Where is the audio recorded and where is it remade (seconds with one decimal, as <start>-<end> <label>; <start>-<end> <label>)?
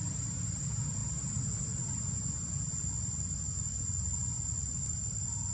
0.0-5.5 recorded